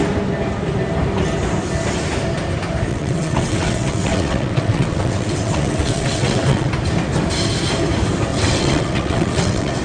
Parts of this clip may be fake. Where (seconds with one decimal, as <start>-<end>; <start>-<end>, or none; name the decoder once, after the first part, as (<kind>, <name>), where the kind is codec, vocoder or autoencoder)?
2.9-6.7 (vocoder, WaveNeXt); 8.3-9.8